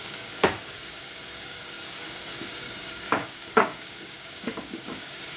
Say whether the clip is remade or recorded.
remade